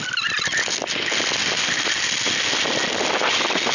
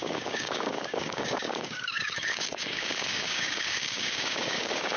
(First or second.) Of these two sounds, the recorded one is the first